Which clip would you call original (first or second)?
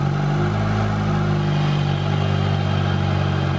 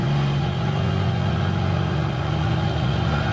first